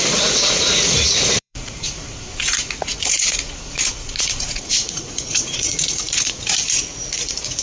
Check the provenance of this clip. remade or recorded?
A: remade